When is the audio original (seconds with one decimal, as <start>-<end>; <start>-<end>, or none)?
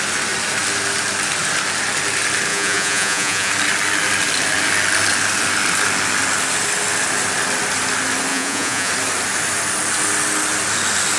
0.0-2.5; 3.5-8.3; 8.9-11.2